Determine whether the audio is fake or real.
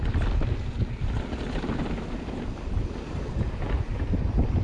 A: real